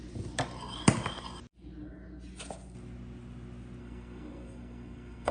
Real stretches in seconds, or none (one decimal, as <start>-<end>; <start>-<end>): 0.0-3.8